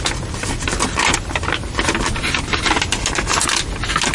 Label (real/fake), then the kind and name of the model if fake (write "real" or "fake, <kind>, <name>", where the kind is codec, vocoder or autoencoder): real